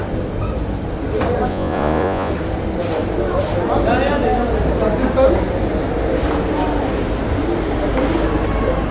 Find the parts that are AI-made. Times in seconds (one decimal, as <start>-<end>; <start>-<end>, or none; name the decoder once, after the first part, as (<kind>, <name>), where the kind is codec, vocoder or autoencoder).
1.5-2.3 (vocoder, Vocos)